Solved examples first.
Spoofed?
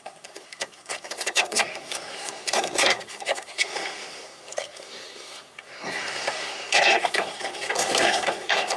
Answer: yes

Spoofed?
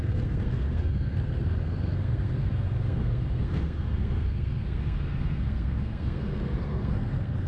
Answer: yes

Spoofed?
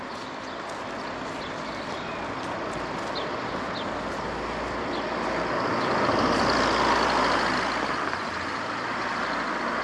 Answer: no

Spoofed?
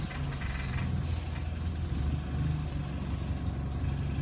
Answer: no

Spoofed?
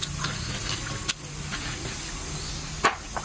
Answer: no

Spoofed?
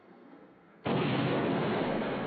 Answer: yes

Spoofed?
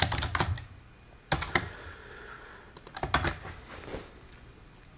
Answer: no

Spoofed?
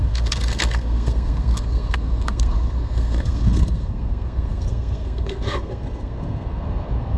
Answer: yes